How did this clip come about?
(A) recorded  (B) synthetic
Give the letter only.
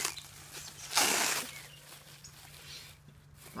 A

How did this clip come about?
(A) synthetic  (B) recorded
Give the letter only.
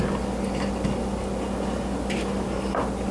B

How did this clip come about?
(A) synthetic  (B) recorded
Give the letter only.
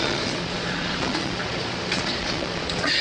A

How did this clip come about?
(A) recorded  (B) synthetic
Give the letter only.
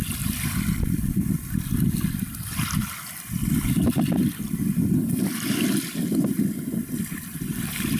B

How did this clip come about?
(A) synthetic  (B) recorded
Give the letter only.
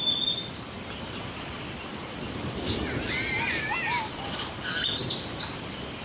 B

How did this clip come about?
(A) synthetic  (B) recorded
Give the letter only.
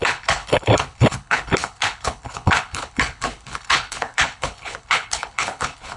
A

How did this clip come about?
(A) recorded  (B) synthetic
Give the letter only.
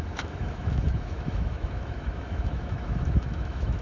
B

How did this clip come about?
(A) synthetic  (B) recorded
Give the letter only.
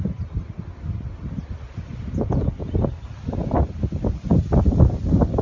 B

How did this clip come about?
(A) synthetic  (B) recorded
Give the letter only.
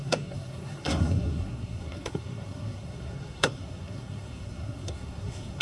A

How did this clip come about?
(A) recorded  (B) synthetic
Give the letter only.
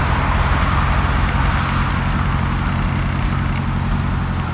A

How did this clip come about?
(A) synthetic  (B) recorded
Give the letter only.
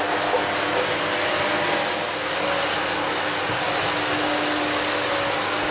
B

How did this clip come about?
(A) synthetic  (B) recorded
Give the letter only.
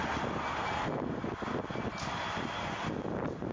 B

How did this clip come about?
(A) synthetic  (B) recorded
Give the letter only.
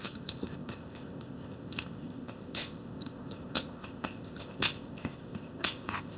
A